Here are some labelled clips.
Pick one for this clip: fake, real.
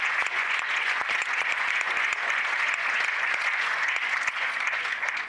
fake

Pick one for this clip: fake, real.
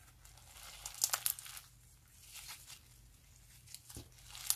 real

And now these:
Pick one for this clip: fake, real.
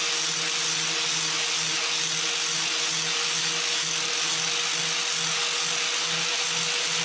real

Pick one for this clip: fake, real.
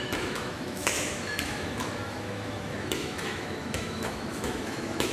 fake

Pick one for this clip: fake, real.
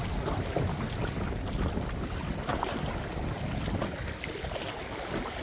real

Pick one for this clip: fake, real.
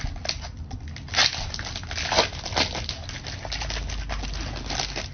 real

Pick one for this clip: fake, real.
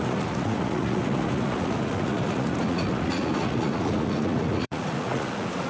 fake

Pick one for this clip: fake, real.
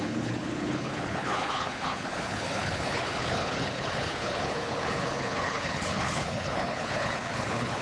fake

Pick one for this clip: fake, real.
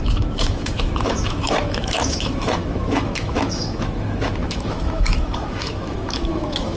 fake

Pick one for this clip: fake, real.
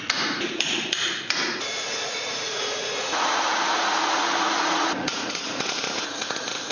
fake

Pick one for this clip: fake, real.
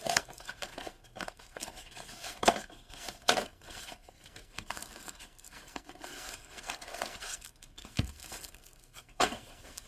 fake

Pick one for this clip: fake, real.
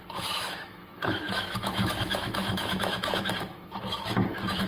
fake